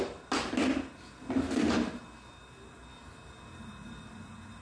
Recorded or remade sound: recorded